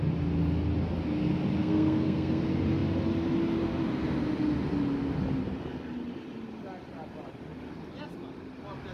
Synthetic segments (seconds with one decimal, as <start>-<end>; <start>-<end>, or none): 1.6-2.4